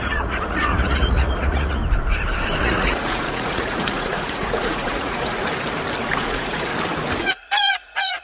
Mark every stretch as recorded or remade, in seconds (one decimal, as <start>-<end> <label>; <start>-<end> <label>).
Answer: 0.0-1.8 remade; 1.8-2.6 recorded; 2.6-5.4 remade; 5.4-6.1 recorded; 6.1-6.7 remade; 6.7-7.2 recorded; 7.2-8.2 remade